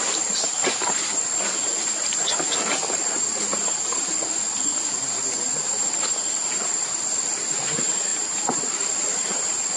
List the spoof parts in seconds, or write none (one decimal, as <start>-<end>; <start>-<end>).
none